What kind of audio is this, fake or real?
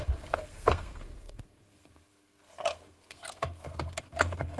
fake